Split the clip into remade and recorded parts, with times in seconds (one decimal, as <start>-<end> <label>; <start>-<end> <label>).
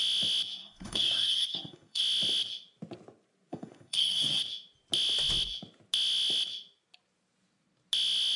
0.0-0.6 recorded; 0.6-2.0 remade; 2.0-3.5 recorded; 3.5-4.4 remade; 4.4-8.4 recorded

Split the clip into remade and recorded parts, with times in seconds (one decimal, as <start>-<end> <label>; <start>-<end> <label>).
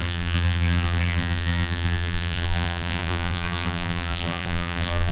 0.0-5.1 remade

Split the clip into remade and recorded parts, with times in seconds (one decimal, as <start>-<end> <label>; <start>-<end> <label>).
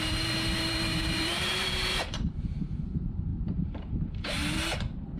0.0-5.2 remade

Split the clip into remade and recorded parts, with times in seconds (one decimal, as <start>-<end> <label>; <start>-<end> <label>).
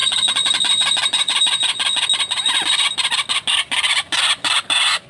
0.0-5.1 recorded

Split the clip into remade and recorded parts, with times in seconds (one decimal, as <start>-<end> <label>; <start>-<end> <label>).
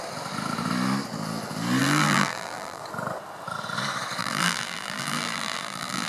0.0-1.8 recorded; 1.8-2.8 remade; 2.8-4.2 recorded; 4.2-6.1 remade